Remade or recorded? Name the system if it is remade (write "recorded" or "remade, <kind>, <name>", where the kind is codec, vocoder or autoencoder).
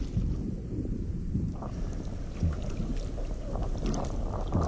recorded